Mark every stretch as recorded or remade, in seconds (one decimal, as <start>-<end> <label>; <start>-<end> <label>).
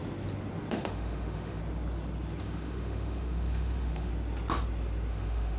0.0-0.7 recorded; 0.7-1.6 remade; 1.6-2.4 recorded; 2.4-4.1 remade; 4.1-5.1 recorded; 5.1-5.6 remade